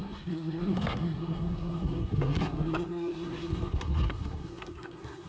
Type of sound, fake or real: fake